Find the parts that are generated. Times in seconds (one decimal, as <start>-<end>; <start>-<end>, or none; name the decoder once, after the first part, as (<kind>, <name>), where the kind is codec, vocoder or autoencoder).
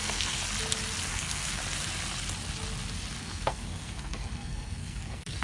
0.0-0.4 (codec, SNAC); 1.1-1.6; 3.2-5.4